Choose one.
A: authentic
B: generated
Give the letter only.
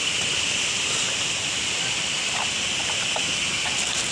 B